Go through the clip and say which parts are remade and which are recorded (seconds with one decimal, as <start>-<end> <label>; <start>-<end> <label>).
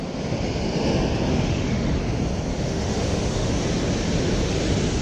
0.0-1.3 recorded; 1.3-2.0 remade; 2.0-2.5 recorded; 2.5-3.5 remade; 3.5-5.0 recorded